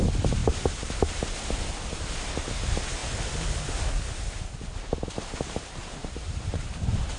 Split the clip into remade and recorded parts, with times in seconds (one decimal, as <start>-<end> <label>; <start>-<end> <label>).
0.0-7.2 recorded